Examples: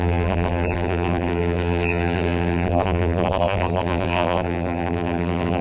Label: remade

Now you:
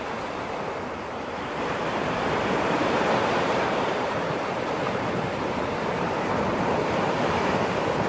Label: remade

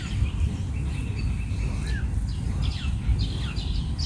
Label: recorded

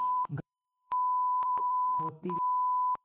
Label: remade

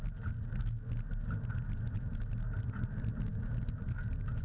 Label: recorded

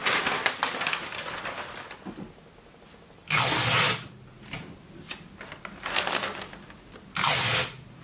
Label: recorded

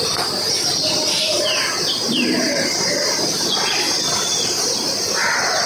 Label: recorded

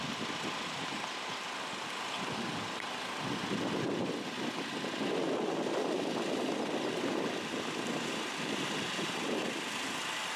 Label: recorded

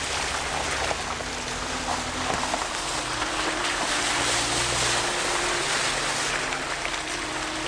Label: recorded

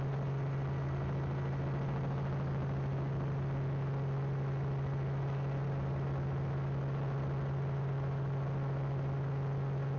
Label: recorded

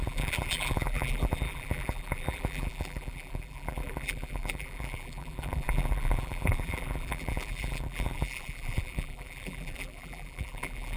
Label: remade